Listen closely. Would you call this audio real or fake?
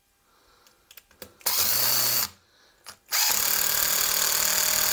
real